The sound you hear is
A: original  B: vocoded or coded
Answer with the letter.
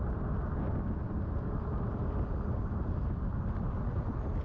A